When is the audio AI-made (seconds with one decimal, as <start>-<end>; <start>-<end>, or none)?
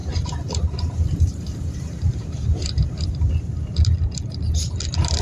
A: 0.0-3.1